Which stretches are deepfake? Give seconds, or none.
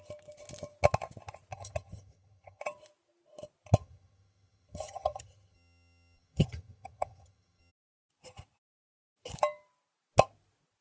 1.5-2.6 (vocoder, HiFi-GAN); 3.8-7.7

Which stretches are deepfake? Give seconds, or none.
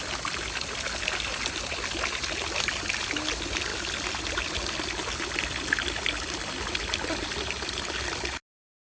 none